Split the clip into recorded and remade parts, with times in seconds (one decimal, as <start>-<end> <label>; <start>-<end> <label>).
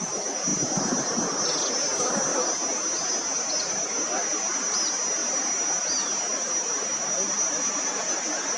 0.0-8.6 recorded